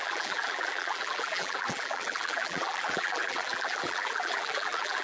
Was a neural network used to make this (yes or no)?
yes